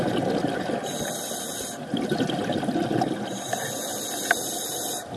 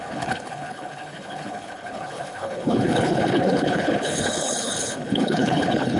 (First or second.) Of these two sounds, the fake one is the second